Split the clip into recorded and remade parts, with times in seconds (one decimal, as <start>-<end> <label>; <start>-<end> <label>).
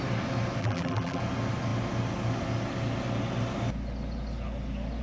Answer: 0.0-0.6 recorded; 0.6-1.2 remade; 1.2-5.0 recorded